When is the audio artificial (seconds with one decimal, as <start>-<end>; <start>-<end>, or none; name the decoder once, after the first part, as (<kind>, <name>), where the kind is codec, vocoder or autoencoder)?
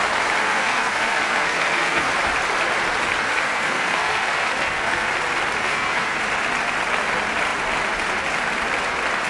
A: 0.4-2.1 (codec, SNAC); 3.2-5.1; 5.6-6.2